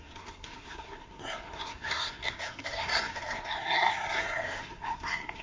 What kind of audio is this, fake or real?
fake